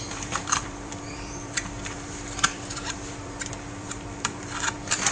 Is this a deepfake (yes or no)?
yes